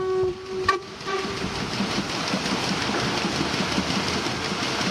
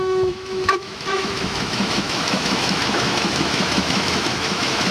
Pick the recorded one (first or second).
first